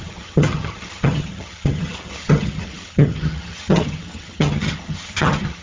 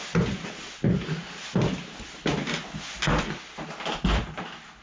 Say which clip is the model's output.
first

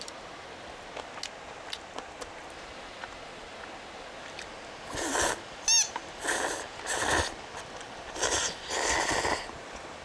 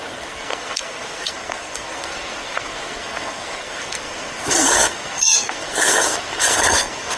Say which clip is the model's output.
second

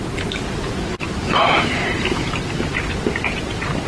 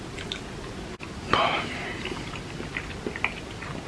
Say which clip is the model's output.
first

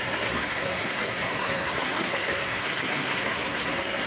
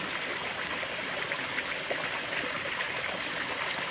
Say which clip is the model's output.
first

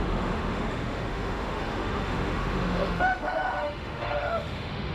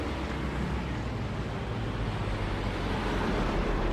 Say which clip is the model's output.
first